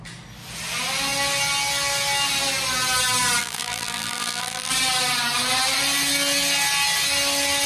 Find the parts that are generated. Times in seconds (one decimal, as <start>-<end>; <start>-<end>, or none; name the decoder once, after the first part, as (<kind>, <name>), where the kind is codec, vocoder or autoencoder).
3.4-4.7 (vocoder, BigVGAN v2)